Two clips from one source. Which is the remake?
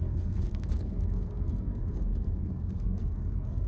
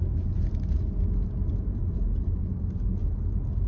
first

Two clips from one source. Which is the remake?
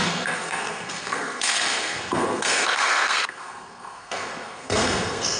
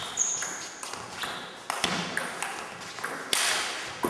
first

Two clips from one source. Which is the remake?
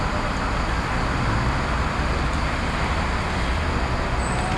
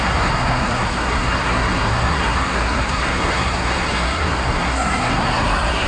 second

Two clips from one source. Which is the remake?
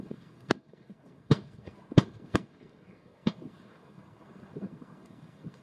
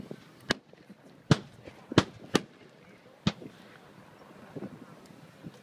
first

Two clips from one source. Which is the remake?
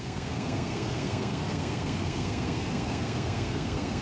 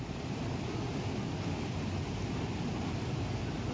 first